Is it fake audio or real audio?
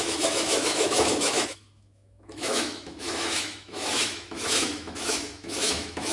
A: fake